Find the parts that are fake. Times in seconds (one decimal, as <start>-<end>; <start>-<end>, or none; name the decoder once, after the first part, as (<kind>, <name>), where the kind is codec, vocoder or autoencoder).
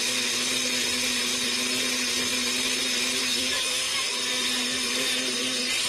3.3-5.4 (vocoder, BigVGAN v2)